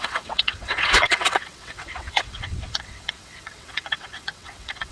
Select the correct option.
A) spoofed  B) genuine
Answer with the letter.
A